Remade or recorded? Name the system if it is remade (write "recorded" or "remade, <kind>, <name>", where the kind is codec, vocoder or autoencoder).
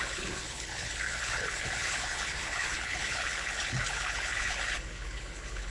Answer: remade, codec, HILCodec